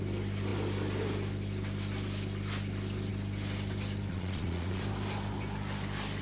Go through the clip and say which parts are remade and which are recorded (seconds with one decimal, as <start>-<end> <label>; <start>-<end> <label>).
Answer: 0.0-4.1 recorded; 4.1-4.8 remade; 4.8-6.2 recorded